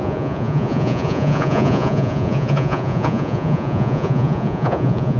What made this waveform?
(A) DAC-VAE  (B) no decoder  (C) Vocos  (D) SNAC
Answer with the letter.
C